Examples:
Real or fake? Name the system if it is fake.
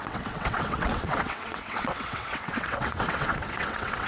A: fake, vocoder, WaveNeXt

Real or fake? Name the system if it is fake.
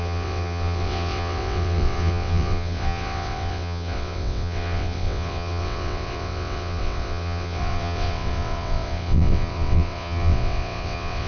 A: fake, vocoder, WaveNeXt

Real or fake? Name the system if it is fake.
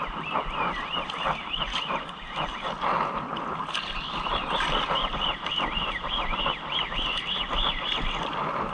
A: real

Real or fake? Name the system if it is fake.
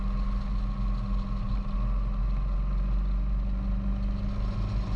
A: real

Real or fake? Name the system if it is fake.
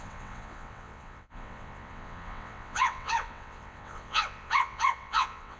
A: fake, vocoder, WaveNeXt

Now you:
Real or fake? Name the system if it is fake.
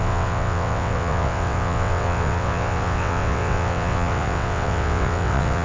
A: fake, vocoder, WaveNeXt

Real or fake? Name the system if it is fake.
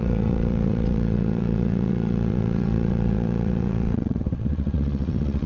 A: fake, vocoder, WaveNeXt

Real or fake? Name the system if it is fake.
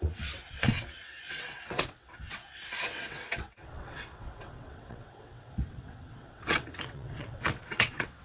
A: fake, vocoder, WaveNeXt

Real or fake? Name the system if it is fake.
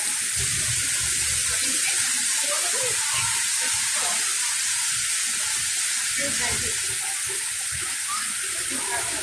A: real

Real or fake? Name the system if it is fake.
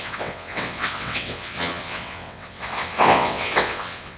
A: fake, vocoder, WaveNeXt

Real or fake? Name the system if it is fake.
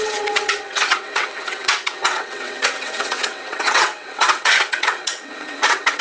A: fake, vocoder, WaveNeXt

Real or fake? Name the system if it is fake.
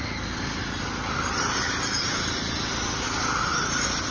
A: real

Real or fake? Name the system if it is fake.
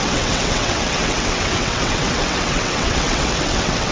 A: fake, vocoder, WaveNeXt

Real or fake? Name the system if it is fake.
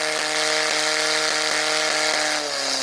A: real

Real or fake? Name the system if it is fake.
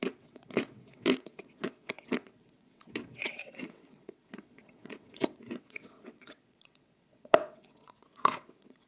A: fake, vocoder, WaveNeXt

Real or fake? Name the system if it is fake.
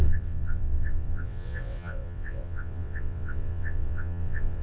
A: fake, vocoder, WaveNeXt